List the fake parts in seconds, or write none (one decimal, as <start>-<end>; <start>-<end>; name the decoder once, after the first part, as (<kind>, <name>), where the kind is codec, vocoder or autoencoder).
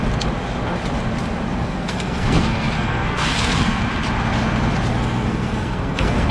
1.6-3.8 (codec, SNAC); 4.9-6.3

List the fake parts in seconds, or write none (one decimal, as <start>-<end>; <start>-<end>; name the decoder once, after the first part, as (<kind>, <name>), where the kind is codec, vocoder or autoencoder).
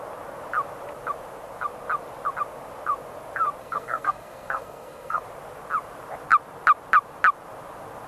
3.6-5.2 (codec, SNAC)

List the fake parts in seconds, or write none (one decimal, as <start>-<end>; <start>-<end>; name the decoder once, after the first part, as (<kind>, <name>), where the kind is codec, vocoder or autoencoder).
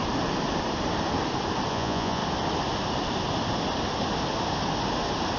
1.7-2.2 (vocoder, Vocos)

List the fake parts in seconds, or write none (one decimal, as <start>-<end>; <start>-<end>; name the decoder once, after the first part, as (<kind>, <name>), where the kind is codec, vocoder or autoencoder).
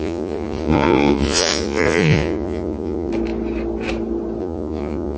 0.0-3.1 (vocoder, Vocos); 4.4-5.2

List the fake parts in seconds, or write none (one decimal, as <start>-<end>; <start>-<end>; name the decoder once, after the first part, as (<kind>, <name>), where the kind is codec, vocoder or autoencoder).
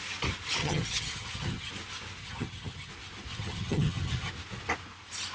0.6-1.7 (vocoder, HiFi-GAN); 2.2-2.9; 3.3-4.3